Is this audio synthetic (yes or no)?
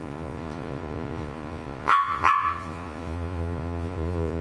yes